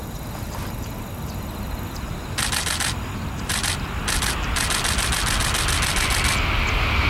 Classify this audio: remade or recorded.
recorded